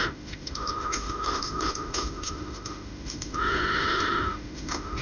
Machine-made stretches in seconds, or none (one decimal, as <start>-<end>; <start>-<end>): 0.0-5.0